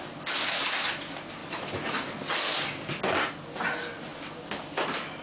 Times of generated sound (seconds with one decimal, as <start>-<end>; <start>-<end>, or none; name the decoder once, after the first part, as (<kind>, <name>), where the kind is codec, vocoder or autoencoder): 1.4-2.0 (vocoder, BigVGAN v2)